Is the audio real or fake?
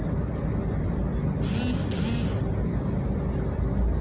real